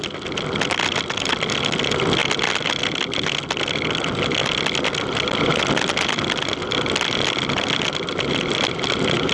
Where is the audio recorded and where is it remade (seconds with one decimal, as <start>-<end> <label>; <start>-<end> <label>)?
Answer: 0.0-9.3 recorded